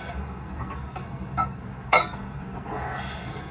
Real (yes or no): no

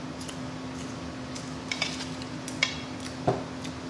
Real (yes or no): yes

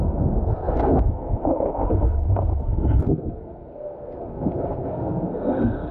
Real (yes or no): no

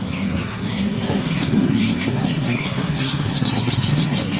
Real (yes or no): no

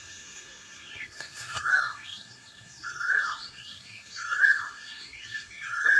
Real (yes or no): no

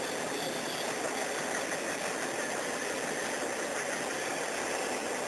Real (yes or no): yes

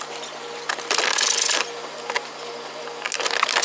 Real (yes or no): yes